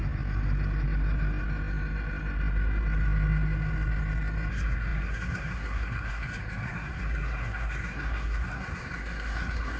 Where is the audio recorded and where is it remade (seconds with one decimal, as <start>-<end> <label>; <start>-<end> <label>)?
0.0-4.5 recorded; 4.5-9.8 remade